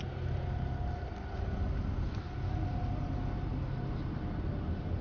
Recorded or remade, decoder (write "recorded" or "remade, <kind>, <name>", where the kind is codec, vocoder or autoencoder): recorded